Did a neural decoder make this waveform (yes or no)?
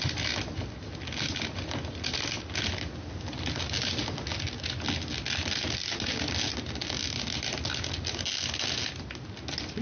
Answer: no